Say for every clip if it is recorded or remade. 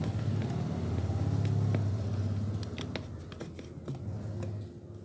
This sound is recorded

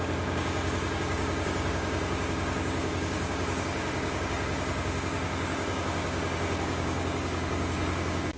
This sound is remade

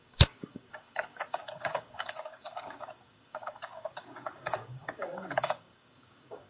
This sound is remade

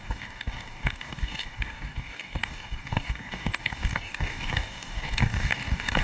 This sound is remade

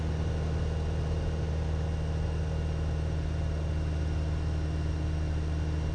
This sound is recorded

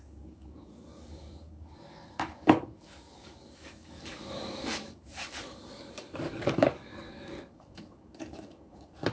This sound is remade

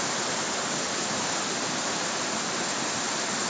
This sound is recorded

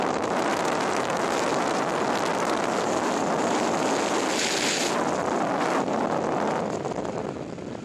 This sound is recorded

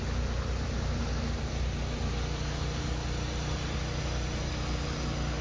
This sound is recorded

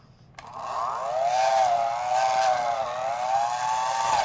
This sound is recorded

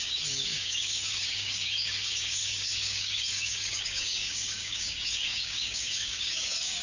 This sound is remade